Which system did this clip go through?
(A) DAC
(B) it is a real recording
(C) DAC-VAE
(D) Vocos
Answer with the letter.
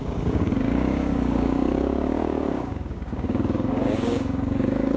A